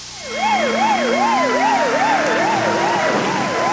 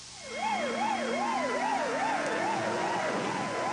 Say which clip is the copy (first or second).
second